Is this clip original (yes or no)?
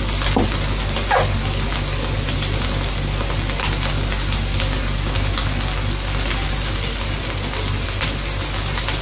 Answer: yes